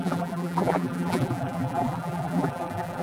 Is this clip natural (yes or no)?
no